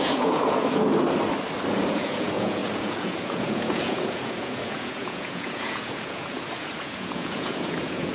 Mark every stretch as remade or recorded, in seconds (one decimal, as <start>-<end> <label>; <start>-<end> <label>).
0.0-0.9 remade; 0.9-1.7 recorded; 1.7-8.1 remade